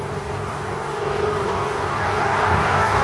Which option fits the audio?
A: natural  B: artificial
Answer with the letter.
B